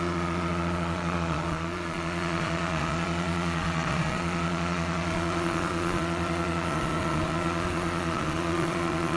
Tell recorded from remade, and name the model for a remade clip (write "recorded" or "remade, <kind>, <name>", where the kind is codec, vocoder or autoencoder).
remade, vocoder, Vocos